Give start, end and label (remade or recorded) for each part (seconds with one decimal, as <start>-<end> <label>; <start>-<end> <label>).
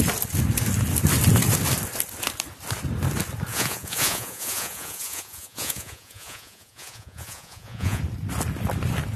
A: 0.0-3.5 recorded; 3.5-8.0 remade; 8.0-9.2 recorded